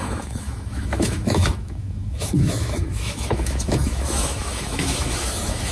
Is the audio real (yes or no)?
no